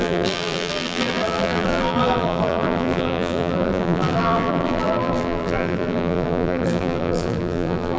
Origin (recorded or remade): remade